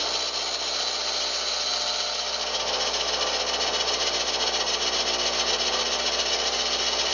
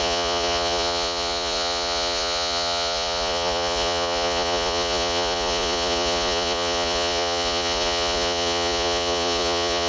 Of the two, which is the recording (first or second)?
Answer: first